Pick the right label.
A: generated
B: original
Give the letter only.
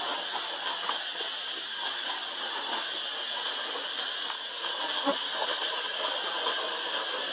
B